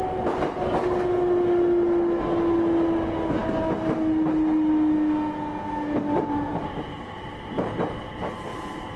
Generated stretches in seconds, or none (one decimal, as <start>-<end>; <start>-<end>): none